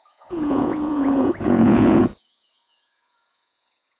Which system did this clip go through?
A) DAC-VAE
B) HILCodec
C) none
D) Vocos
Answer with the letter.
D